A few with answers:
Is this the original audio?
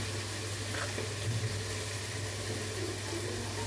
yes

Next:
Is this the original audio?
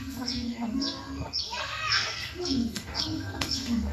no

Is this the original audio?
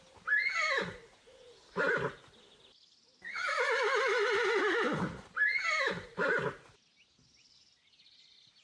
yes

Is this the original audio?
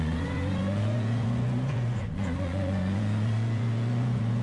no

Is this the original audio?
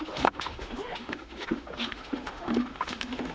no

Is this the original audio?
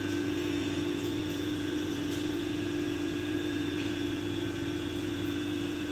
no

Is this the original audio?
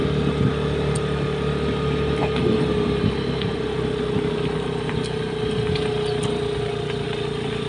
yes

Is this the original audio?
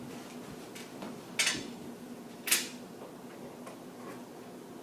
yes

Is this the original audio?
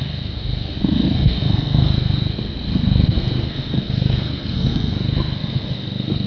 no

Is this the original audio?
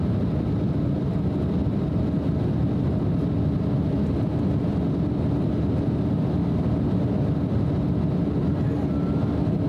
yes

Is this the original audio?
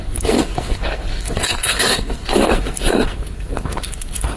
no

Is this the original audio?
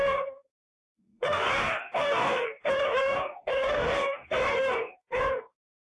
no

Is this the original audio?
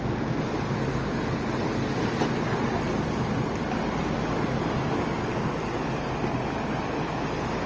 yes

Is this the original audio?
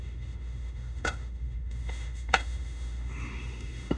no